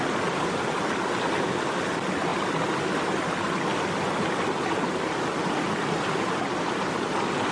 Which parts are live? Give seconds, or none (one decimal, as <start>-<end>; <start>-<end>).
0.0-7.5